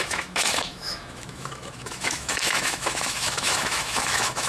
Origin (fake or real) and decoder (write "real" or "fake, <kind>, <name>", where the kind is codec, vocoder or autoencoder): fake, autoencoder, DAC-VAE